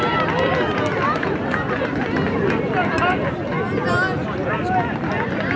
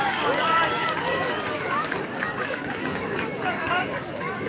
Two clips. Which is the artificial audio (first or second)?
second